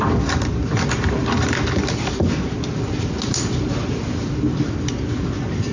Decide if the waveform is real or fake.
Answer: real